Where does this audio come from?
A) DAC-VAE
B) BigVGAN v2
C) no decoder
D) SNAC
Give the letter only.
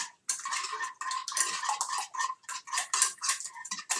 C